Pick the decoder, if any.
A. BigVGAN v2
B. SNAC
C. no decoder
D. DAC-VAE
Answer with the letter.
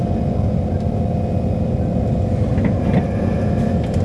C